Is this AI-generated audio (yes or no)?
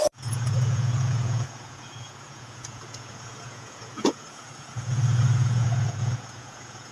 yes